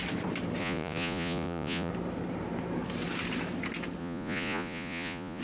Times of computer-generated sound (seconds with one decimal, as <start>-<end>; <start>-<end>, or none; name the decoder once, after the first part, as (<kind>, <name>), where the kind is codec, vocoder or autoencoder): 0.6-1.9 (vocoder, Vocos); 4.0-5.4